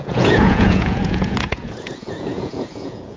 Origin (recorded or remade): remade